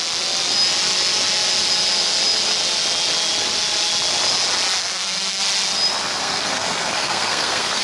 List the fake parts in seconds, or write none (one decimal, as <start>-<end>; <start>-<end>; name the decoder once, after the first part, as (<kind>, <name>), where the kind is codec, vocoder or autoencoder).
4.8-5.4 (codec, SNAC); 6.2-7.8